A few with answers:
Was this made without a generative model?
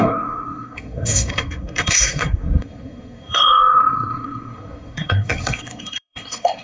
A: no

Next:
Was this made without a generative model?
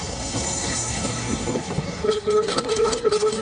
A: no